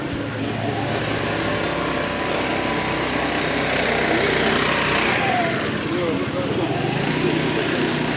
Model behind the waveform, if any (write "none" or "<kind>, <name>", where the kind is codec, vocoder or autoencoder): none